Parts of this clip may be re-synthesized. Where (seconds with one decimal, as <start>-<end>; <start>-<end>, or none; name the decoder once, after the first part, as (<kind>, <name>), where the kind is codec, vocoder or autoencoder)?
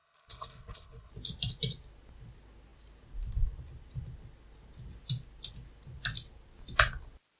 0.0-1.1 (codec, HILCodec)